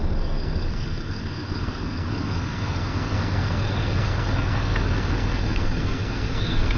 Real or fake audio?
fake